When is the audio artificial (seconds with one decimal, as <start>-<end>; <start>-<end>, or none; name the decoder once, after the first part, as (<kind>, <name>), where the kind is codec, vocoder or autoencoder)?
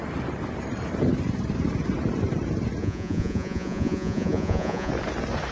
2.8-4.9 (vocoder, Vocos)